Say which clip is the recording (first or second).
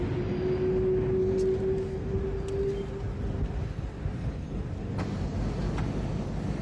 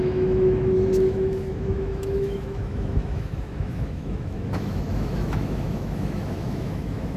first